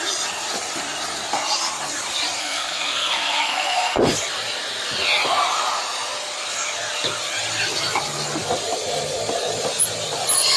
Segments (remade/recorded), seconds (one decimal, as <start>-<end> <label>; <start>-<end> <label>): 0.0-2.4 recorded; 2.4-4.0 remade; 4.0-10.6 recorded

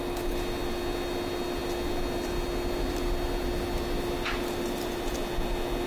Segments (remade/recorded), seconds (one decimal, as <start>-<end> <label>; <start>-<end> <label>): 0.0-5.9 recorded

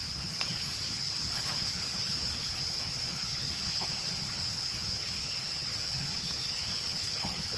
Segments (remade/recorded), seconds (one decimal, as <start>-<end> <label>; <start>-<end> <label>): 0.0-7.6 remade

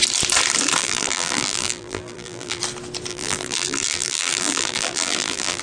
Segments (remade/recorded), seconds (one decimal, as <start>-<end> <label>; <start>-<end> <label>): 0.0-0.8 recorded; 0.8-2.6 remade; 2.6-3.1 recorded; 3.1-5.6 remade

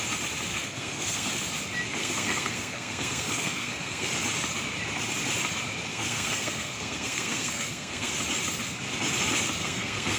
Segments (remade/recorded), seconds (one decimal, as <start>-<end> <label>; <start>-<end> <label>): 0.0-0.5 recorded; 0.5-1.3 remade; 1.3-2.0 recorded; 2.0-4.1 remade; 4.1-5.9 recorded; 5.9-8.1 remade; 8.1-9.6 recorded; 9.6-10.2 remade

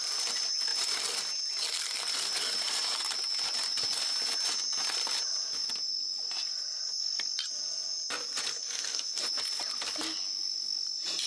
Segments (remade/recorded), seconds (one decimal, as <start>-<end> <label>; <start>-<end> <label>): 0.0-8.5 recorded; 8.5-9.2 remade; 9.2-11.3 recorded